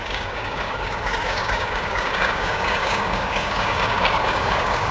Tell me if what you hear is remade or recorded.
remade